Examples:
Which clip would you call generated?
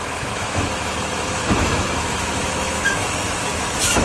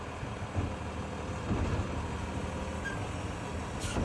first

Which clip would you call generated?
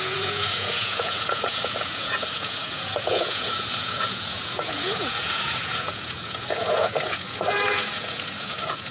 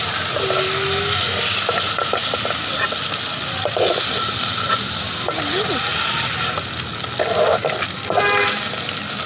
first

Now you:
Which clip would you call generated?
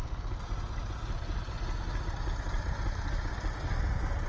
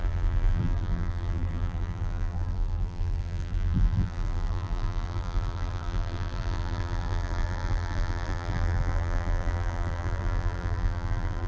second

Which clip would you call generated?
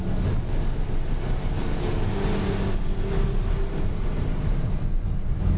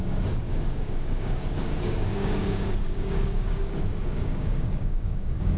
second